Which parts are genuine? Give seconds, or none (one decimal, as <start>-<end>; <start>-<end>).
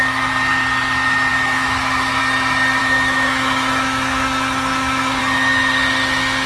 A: 0.0-1.3; 2.2-2.8; 5.2-6.5